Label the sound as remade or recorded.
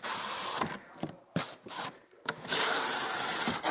remade